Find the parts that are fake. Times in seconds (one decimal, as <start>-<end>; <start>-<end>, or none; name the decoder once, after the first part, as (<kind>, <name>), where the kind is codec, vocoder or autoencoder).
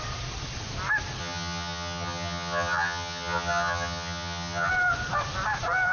1.2-4.7 (vocoder, HiFi-GAN)